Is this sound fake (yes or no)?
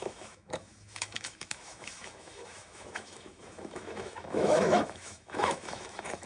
yes